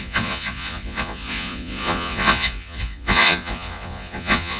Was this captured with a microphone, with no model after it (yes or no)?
no